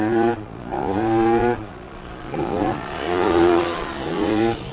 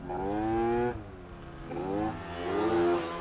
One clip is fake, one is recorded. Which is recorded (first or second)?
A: second